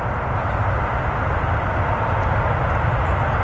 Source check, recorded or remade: recorded